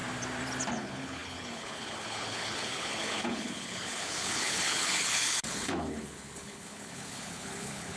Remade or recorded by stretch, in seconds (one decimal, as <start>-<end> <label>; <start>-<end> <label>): 0.0-0.7 recorded; 0.7-8.0 remade